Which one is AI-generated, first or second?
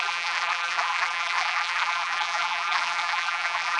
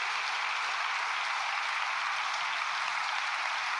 first